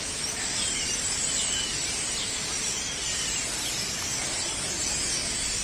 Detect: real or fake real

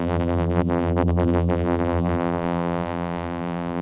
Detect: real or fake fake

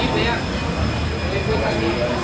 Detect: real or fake real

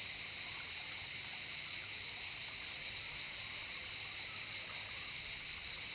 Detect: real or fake real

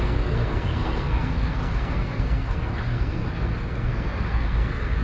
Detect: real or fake fake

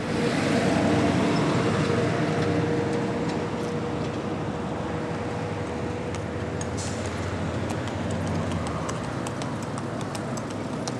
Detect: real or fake real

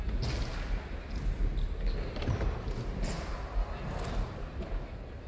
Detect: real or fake real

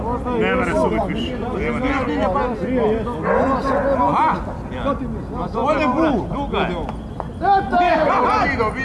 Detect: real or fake real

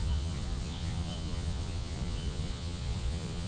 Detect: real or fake fake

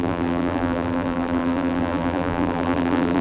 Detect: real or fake fake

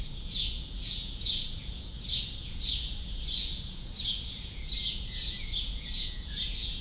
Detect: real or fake fake